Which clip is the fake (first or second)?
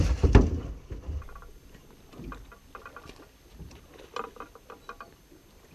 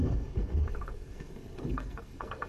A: second